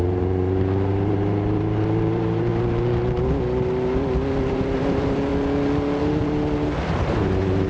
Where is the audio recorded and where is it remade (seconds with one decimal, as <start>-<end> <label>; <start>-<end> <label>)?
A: 0.0-2.5 remade; 2.5-4.5 recorded; 4.5-5.3 remade; 5.3-6.0 recorded; 6.0-7.7 remade